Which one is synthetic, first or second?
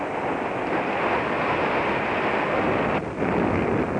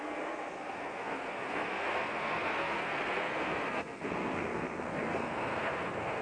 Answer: second